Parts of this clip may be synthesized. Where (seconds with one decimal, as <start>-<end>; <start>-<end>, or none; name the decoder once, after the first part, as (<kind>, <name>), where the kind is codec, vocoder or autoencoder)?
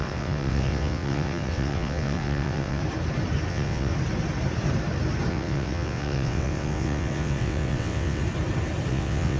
0.0-2.8 (vocoder, WaveNeXt); 3.5-3.9; 5.3-8.2; 8.9-9.4